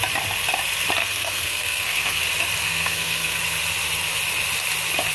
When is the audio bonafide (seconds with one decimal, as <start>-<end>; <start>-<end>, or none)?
0.0-1.0; 2.2-2.6; 3.4-5.1